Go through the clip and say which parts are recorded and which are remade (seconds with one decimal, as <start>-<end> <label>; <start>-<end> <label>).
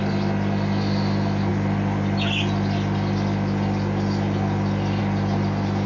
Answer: 0.0-5.9 recorded